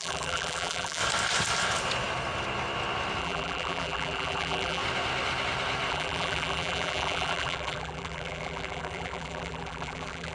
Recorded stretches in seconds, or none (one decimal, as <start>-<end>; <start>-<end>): 1.0-3.2; 4.8-5.9